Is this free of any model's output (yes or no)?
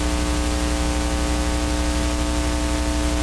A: yes